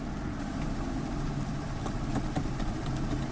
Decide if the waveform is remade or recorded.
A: recorded